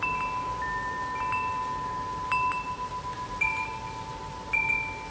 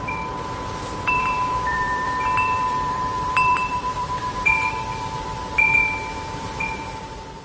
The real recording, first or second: first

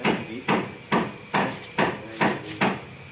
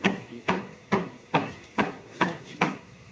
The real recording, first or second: first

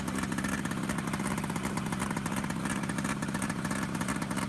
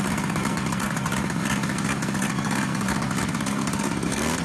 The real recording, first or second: first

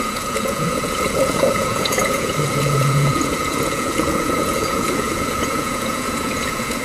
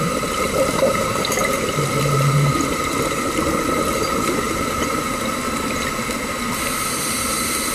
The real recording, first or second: second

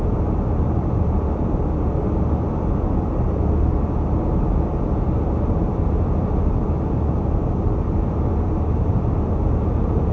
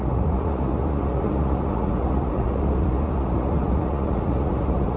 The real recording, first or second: first